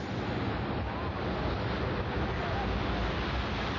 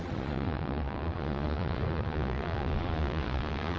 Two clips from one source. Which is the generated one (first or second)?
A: second